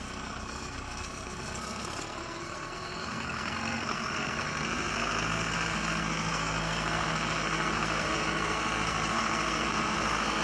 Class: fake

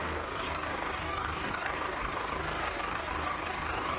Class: fake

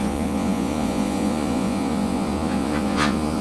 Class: fake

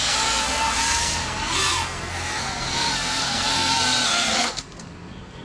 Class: fake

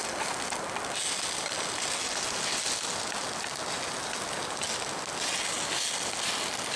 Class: real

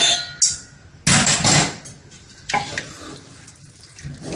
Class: real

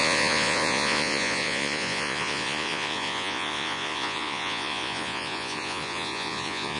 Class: fake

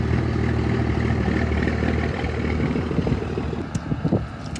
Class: real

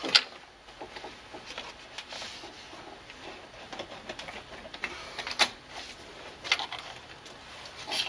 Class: real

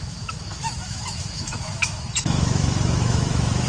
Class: fake